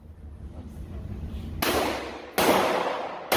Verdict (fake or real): real